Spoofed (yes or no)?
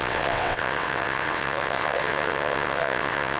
yes